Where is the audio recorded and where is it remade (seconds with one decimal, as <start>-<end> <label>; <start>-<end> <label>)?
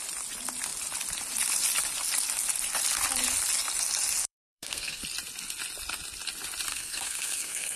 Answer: 0.0-4.2 recorded; 4.2-5.0 remade; 5.0-6.7 recorded; 6.7-7.8 remade